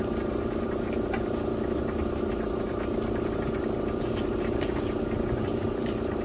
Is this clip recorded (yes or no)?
yes